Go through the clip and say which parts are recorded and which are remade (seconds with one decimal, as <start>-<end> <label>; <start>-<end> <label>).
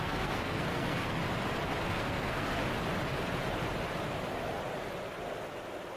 0.0-1.2 remade; 1.2-1.8 recorded; 1.8-2.6 remade; 2.6-6.0 recorded